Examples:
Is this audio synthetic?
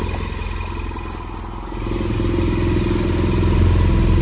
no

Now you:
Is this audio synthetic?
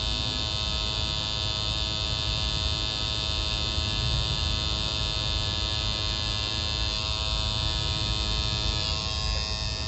no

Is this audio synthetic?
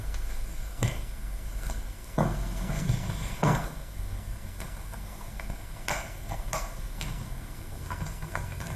yes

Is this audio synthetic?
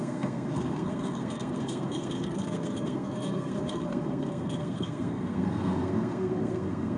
yes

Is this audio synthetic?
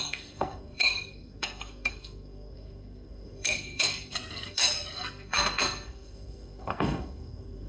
yes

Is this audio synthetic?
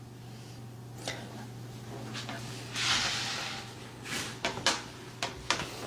no